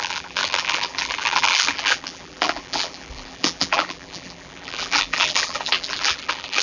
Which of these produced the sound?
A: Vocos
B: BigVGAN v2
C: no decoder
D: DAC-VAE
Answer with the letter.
B